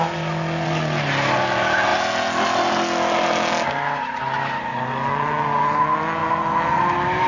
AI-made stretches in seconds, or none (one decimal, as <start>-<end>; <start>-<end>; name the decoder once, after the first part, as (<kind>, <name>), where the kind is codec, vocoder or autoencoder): none